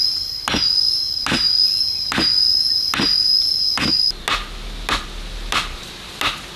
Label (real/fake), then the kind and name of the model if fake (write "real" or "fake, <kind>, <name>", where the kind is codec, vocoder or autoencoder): real